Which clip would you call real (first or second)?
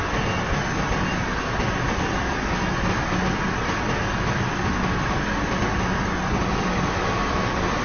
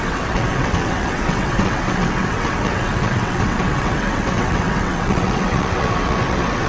first